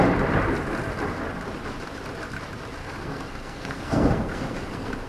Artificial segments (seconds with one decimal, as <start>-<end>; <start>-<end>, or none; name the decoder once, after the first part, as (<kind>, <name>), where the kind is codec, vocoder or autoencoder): 2.8-5.1 (codec, SNAC)